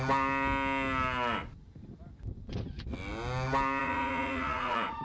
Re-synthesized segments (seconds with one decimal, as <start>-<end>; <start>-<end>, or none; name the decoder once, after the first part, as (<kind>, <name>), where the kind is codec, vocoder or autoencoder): 3.8-5.0 (vocoder, Vocos)